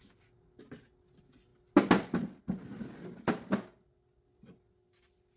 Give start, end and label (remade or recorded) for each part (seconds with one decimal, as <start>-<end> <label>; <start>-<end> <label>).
0.0-5.4 recorded